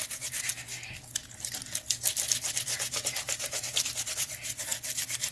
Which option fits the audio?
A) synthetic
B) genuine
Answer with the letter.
B